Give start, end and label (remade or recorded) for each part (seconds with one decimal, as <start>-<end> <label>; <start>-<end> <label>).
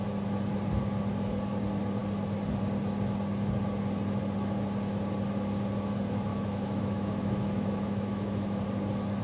0.0-6.3 recorded; 6.3-8.6 remade; 8.6-9.2 recorded